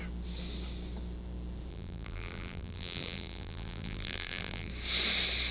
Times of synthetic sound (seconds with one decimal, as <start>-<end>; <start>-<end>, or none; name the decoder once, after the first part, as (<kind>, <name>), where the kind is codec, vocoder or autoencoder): 1.7-4.7 (vocoder, BigVGAN v2)

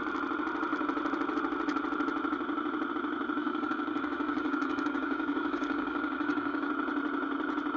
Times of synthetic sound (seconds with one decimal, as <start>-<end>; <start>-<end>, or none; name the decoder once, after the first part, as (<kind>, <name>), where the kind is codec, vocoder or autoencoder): 3.4-6.7 (codec, DAC)

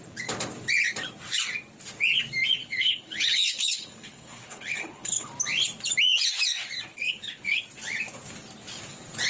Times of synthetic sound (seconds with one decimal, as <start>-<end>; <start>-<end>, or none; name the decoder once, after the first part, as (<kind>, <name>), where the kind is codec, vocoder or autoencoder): 2.6-5.3 (codec, HILCodec); 6.9-7.6